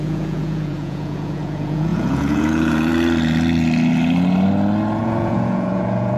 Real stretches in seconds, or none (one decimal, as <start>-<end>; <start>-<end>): 2.9-5.0